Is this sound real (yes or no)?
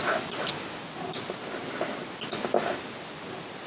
yes